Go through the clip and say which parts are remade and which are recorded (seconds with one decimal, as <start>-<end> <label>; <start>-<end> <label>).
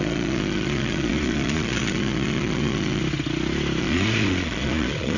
0.0-3.0 remade; 3.0-3.8 recorded; 3.8-5.2 remade